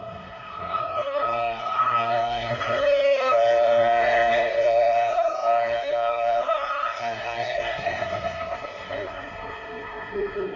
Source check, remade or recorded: remade